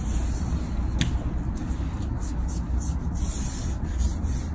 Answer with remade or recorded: recorded